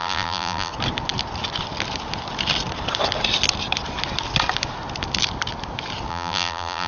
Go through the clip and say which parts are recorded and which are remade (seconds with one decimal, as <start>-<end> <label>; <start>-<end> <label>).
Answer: 0.0-0.7 remade; 0.7-6.1 recorded; 6.1-6.9 remade